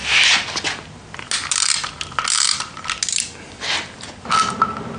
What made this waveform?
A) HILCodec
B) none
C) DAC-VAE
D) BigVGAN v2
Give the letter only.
B